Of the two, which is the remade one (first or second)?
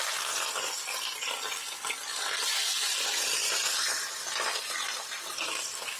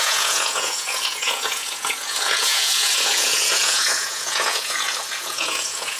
second